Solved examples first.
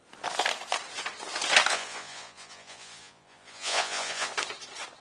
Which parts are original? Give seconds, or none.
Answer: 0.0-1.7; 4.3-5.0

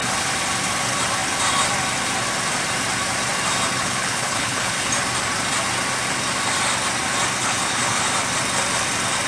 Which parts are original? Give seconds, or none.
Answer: 0.0-3.8; 4.9-7.4; 8.0-9.3

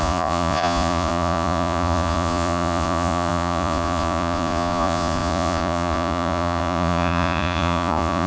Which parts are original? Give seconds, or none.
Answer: none

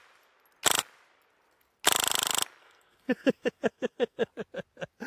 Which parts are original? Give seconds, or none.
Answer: 0.0-2.6; 4.3-5.1

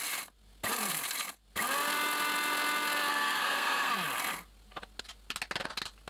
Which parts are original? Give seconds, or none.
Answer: 0.0-3.1; 3.9-6.1